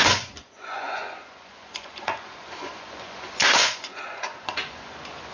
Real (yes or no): no